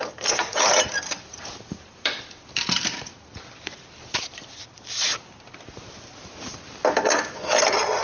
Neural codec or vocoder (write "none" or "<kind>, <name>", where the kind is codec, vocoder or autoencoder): vocoder, BigVGAN v2